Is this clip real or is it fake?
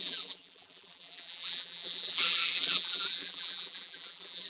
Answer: fake